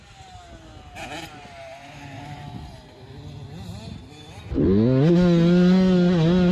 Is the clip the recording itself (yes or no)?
yes